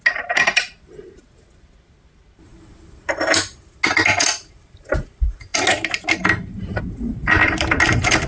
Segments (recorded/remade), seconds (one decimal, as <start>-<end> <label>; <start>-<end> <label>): 0.0-8.3 recorded